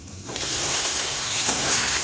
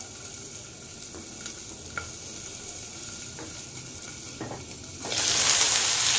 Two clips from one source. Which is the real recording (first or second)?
second